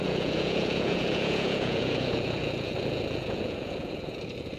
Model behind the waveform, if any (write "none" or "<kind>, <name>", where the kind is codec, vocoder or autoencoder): vocoder, Vocos